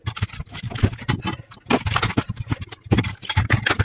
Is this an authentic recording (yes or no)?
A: yes